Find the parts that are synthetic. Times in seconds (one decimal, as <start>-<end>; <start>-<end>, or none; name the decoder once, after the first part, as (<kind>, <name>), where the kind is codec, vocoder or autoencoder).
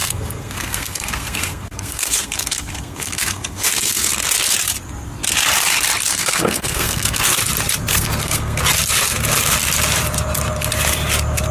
0.0-4.1 (codec, SNAC); 6.1-7.4; 7.9-8.6